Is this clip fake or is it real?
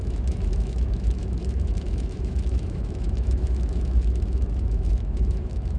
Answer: fake